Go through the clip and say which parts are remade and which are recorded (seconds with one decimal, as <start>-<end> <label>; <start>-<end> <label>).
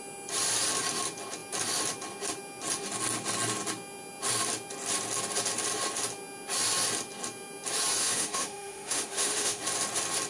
0.0-8.0 recorded; 8.0-9.6 remade; 9.6-10.3 recorded